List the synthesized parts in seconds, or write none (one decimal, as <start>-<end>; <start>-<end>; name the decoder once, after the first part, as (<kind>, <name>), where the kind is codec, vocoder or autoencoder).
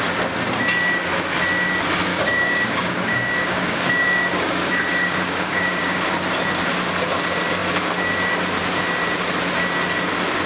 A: 2.1-6.0 (codec, DAC)